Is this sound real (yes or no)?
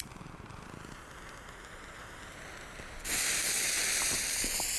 yes